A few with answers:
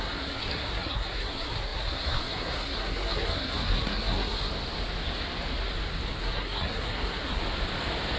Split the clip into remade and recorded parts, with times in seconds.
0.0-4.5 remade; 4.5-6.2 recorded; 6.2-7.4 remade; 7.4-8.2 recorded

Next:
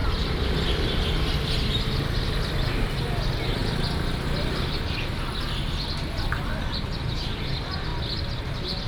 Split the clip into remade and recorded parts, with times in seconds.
0.0-3.6 remade; 3.6-6.0 recorded; 6.0-7.9 remade; 7.9-8.4 recorded; 8.4-8.9 remade